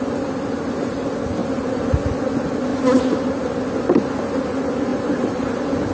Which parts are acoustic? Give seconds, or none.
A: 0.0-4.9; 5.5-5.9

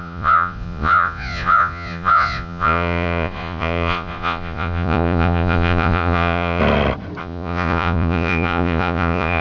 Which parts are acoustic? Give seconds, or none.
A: 6.6-7.2

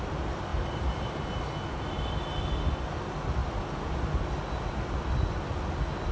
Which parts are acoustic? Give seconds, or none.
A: 0.0-0.5; 1.2-6.1

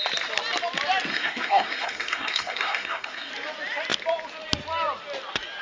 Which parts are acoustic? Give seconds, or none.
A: 0.0-1.1; 3.3-5.6

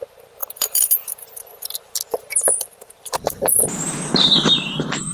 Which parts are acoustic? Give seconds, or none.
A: none

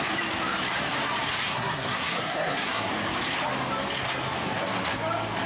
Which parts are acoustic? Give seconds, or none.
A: 0.0-1.4; 2.9-5.5

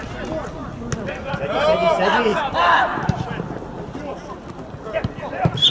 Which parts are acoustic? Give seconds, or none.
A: 0.0-5.7